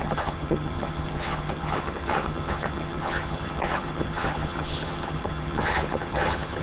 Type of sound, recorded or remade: remade